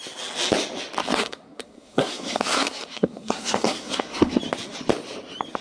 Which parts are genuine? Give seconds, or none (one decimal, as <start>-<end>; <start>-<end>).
0.0-1.0; 4.4-5.6